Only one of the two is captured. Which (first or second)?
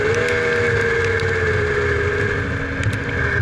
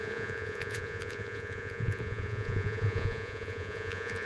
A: first